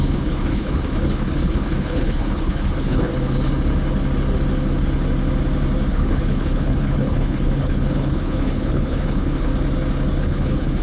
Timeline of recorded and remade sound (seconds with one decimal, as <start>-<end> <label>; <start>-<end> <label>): 0.0-3.1 remade; 3.1-5.9 recorded; 5.9-9.5 remade; 9.5-10.2 recorded; 10.2-10.8 remade